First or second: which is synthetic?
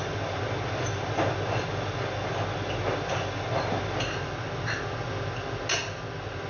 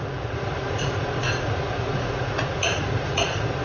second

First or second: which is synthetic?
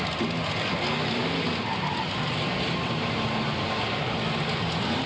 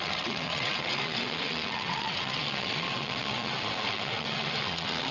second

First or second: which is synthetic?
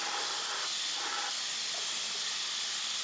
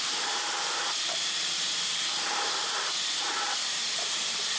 second